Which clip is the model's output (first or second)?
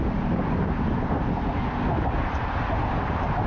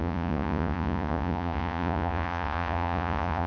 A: second